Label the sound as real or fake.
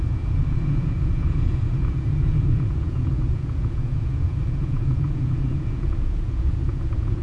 fake